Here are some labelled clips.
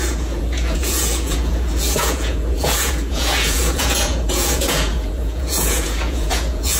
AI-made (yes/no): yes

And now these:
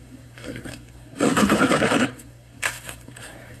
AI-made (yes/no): yes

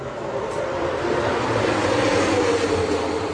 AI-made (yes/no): no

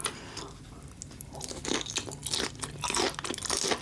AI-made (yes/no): no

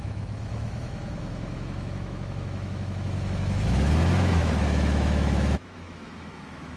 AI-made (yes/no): yes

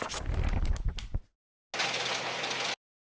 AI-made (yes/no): no